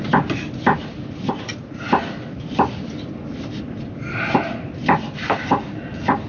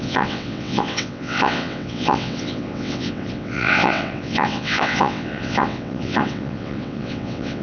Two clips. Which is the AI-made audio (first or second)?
second